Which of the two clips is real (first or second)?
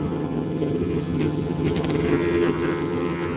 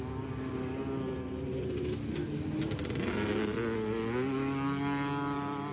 second